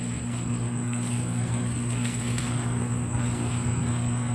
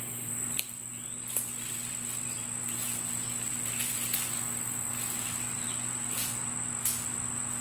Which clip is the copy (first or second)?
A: first